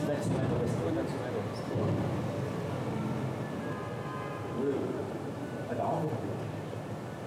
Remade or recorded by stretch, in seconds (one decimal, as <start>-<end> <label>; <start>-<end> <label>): 0.0-5.0 recorded; 5.0-6.1 remade; 6.1-7.3 recorded